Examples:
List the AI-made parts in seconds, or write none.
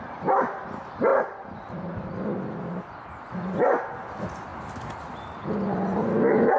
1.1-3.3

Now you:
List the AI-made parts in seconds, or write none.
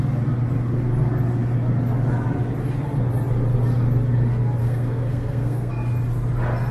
4.6-5.7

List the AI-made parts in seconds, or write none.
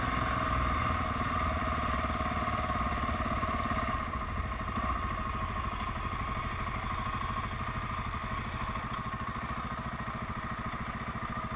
none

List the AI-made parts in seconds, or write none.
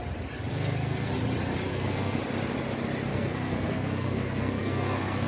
0.5-1.1; 1.7-2.2; 3.1-5.3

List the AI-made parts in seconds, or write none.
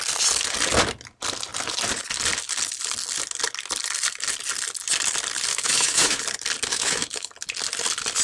5.5-6.2; 6.7-7.3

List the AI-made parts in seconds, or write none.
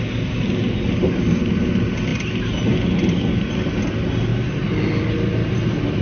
none